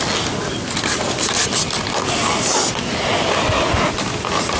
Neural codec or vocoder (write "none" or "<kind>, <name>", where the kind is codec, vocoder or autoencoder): none